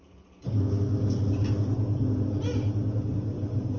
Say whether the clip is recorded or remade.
recorded